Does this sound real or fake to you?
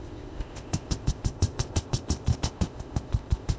fake